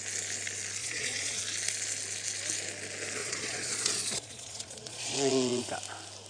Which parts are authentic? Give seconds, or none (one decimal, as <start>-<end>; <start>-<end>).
0.0-0.8; 1.4-3.2; 5.6-6.3